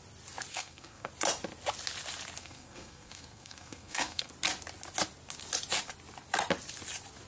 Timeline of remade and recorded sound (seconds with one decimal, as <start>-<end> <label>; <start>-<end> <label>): 0.0-0.5 recorded; 0.5-1.1 remade; 1.1-2.4 recorded; 2.4-4.3 remade; 4.3-7.3 recorded